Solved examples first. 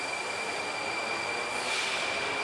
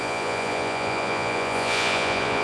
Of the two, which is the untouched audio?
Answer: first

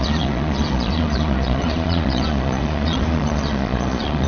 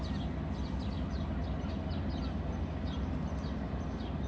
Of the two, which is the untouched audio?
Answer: second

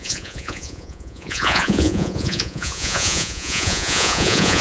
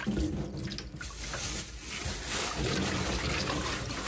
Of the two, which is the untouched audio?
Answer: second